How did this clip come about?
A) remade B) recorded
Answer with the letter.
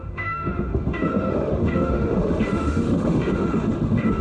A